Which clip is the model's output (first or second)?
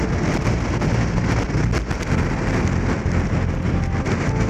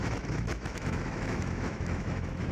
second